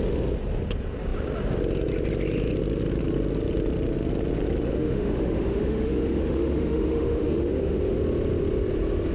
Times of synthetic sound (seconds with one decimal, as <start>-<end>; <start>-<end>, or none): 4.7-8.0